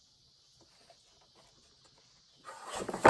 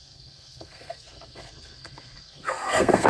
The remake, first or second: second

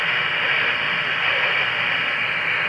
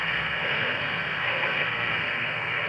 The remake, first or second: second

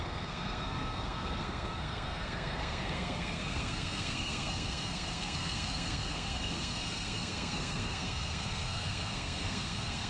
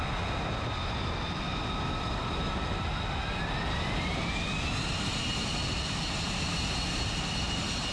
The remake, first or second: first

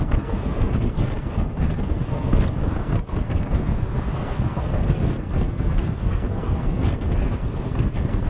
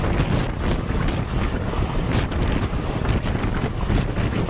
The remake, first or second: first